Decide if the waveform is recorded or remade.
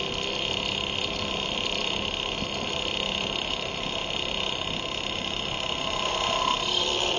remade